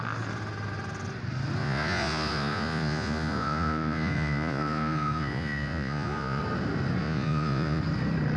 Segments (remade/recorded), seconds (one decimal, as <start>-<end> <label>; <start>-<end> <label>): 0.0-1.6 recorded; 1.6-6.4 remade; 6.4-7.0 recorded; 7.0-7.8 remade; 7.8-8.4 recorded